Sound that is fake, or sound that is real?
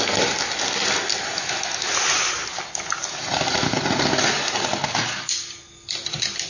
real